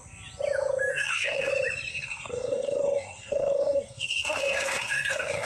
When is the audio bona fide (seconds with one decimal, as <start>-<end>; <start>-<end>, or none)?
0.0-0.9; 1.5-1.9